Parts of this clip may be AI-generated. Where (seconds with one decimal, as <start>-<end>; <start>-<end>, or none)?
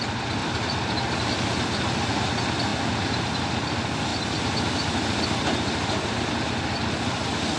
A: 0.4-1.3